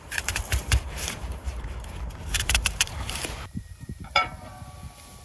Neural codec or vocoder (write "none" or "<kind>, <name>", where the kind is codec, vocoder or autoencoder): vocoder, BigVGAN v2